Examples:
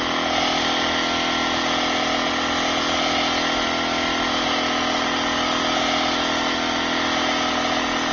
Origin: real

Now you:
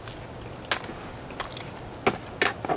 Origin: real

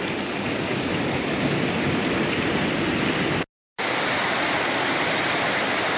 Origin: real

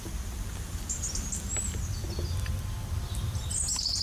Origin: real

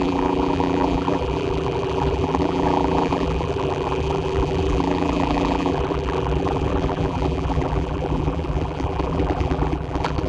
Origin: fake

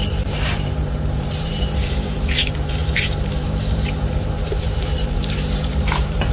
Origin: fake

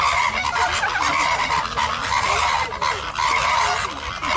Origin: real